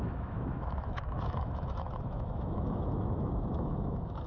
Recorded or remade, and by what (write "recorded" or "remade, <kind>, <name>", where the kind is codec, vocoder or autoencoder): remade, autoencoder, DAC-VAE